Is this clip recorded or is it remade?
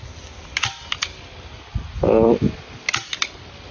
recorded